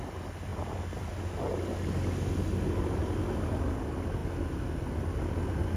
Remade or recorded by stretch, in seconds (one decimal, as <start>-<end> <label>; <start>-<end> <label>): 0.0-5.8 recorded